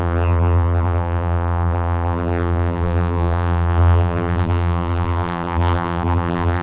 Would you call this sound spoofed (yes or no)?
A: yes